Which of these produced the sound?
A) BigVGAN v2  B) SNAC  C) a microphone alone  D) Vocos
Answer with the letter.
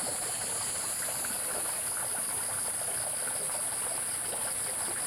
C